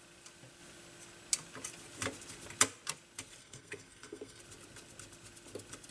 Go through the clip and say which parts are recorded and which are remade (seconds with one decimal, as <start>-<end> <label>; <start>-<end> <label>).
0.0-3.4 recorded; 3.4-4.4 remade; 4.4-5.9 recorded